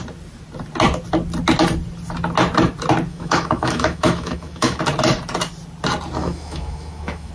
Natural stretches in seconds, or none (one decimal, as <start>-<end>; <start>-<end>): 0.0-3.1; 4.8-6.2